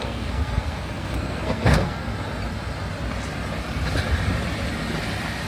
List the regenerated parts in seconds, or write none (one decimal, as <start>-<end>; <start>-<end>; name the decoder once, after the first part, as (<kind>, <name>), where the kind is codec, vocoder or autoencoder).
0.0-2.1 (codec, SNAC)